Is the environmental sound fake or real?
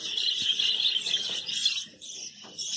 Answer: real